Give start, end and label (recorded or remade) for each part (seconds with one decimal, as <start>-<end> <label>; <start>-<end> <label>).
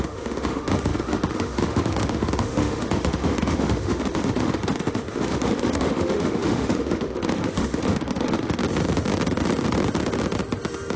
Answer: 0.0-8.6 remade; 8.6-11.0 recorded